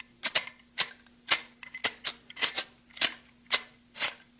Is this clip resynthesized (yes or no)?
no